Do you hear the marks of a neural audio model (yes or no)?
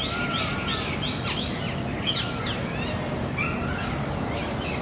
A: no